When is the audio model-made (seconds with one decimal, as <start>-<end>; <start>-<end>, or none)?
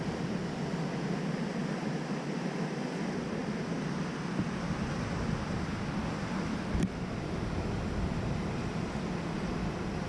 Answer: none